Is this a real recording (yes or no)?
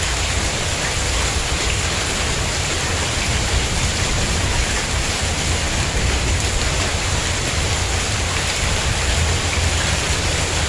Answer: no